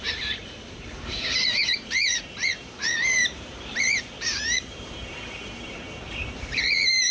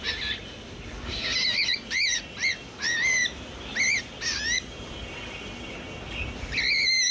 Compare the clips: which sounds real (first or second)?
second